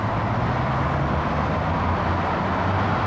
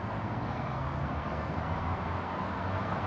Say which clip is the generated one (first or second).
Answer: second